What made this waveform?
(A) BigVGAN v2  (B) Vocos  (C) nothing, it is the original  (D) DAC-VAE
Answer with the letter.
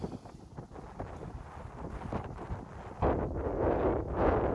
C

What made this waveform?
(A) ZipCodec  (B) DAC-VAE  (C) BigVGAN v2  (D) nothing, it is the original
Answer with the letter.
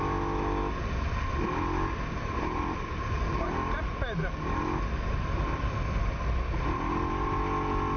D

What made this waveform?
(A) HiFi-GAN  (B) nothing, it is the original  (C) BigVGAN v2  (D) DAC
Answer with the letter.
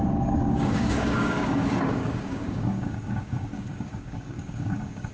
D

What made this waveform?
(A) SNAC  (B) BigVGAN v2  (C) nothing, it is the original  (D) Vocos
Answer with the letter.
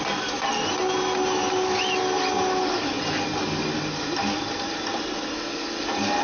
C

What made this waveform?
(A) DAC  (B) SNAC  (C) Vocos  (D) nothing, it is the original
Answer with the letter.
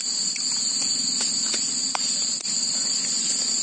D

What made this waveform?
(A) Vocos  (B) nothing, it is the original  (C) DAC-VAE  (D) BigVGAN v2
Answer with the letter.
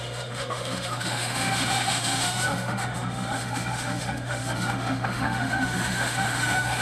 C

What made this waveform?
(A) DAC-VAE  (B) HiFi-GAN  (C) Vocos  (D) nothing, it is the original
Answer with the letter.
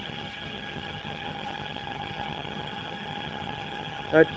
B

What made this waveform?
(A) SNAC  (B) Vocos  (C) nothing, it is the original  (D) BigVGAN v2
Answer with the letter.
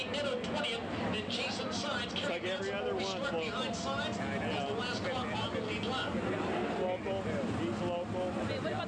C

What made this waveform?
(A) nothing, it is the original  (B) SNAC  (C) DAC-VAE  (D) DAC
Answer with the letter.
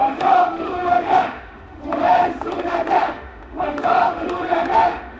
C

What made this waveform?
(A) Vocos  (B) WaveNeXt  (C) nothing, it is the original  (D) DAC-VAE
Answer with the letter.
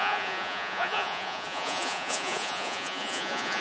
A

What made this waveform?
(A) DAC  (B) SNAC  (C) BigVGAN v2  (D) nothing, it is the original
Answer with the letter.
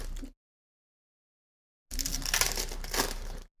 D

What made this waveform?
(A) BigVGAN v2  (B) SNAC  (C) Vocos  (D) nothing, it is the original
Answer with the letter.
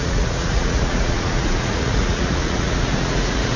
C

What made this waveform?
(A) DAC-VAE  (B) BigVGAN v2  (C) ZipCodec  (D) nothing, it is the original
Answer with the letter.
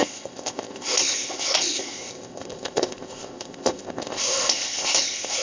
C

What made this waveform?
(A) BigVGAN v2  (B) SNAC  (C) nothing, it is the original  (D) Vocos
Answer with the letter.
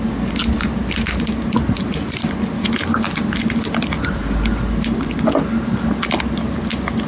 C